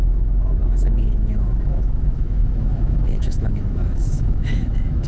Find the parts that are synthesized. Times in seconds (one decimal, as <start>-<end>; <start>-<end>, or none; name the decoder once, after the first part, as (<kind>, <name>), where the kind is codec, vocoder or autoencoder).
0.0-5.1 (autoencoder, DAC-VAE)